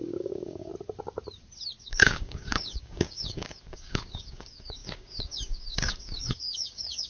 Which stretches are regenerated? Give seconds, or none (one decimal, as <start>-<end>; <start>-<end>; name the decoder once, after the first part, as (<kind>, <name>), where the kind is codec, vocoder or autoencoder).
0.0-0.7 (codec, DAC); 1.8-7.1